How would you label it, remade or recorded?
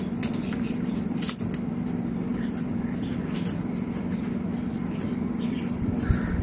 recorded